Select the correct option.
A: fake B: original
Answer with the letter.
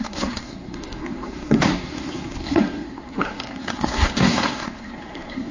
A